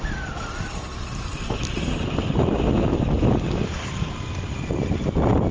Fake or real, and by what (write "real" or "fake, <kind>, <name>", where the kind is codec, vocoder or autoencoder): real